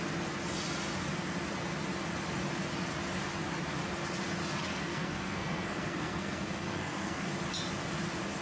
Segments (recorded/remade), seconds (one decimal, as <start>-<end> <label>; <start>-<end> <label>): 0.0-4.7 recorded; 4.7-7.3 remade; 7.3-8.4 recorded